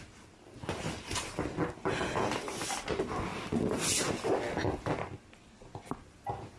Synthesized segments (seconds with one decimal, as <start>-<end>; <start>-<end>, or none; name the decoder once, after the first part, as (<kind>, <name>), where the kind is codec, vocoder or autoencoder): none